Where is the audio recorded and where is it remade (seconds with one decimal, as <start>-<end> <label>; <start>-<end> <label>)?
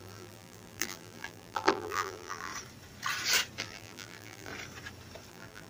0.0-2.5 remade; 2.5-3.6 recorded; 3.6-4.5 remade; 4.5-5.3 recorded; 5.3-5.7 remade